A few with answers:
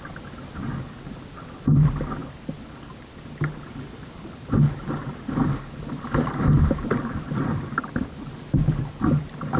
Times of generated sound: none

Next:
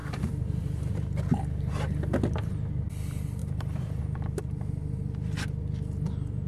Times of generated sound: 0.0-0.9 (vocoder, BigVGAN v2); 3.4-4.0

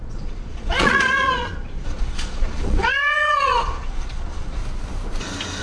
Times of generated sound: 0.0-4.6 (vocoder, Vocos)

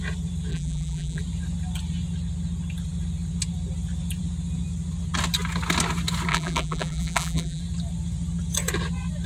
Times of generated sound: 0.5-1.2 (vocoder, BigVGAN v2); 6.3-7.6